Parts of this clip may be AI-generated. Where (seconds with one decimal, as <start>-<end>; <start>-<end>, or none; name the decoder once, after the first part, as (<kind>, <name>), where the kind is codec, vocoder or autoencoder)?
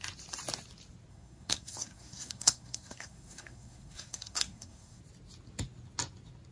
1.1-5.0 (codec, SNAC)